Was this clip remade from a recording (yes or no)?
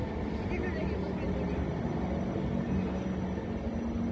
no